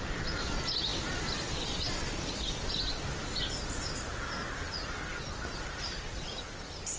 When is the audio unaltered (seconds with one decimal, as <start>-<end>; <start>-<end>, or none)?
0.0-7.0